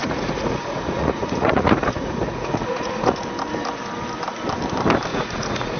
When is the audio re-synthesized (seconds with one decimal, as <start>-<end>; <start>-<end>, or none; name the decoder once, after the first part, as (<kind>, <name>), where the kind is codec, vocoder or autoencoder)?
0.0-3.2 (vocoder, Vocos); 5.1-5.8